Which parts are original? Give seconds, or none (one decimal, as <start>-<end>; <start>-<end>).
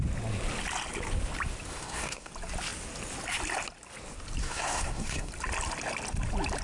0.0-1.7; 2.3-4.4; 5.3-6.6